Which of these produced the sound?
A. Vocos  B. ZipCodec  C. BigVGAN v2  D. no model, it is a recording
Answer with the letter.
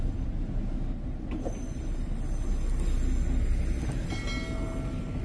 D